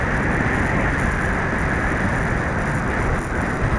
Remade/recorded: recorded